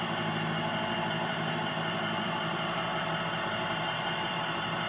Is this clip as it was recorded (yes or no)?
yes